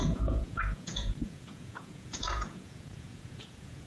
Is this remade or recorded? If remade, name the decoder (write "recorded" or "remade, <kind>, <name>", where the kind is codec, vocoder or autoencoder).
remade, vocoder, Vocos